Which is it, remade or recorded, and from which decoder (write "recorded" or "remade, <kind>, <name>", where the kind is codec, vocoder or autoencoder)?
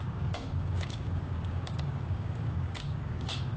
remade, codec, DAC